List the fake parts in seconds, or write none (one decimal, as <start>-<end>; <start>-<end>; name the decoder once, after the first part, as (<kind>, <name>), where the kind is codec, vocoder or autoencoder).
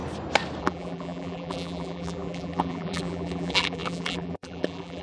0.6-5.0 (vocoder, BigVGAN v2)